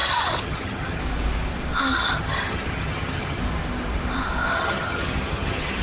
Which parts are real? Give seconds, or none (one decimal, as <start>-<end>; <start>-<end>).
1.0-1.9; 3.4-4.5